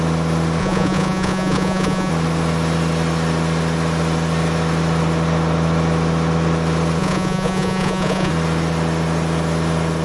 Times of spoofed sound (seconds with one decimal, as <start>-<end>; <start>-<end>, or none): 0.6-2.1; 7.0-8.3